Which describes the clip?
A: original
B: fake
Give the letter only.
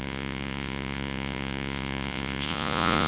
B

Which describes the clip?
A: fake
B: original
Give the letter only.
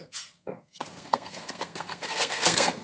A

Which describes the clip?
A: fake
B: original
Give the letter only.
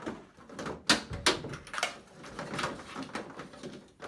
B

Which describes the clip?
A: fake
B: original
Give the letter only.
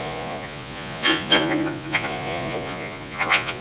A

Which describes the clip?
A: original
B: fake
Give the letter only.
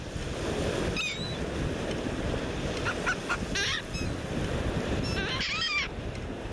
A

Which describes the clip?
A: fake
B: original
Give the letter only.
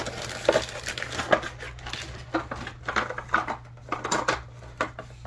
B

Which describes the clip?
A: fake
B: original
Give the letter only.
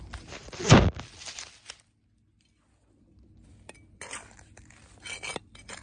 B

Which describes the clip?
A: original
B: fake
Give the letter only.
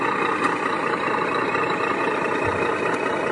A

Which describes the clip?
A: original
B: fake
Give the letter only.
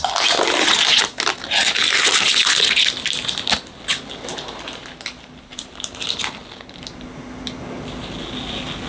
A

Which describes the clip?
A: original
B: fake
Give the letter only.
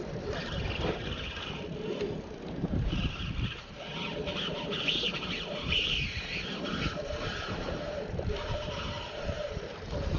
B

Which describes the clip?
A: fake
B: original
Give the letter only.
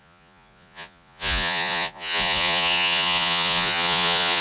A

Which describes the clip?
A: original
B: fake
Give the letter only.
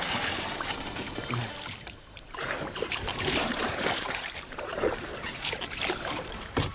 B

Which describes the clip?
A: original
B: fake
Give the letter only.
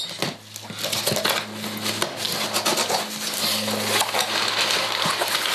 A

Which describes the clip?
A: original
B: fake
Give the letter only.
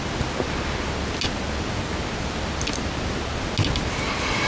A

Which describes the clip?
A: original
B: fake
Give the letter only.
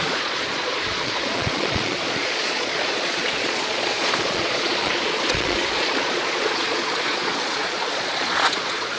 B